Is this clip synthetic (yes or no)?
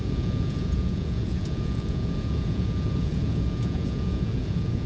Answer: yes